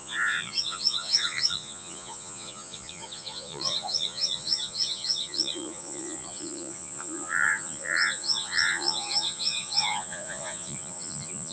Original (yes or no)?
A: no